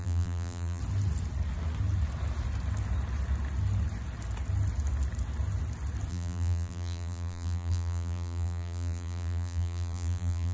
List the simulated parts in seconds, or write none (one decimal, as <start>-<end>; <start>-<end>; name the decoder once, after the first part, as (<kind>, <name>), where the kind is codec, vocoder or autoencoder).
0.0-0.8 (vocoder, BigVGAN v2); 6.1-10.5